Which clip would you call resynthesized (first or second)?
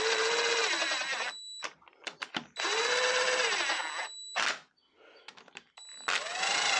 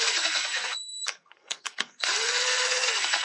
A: second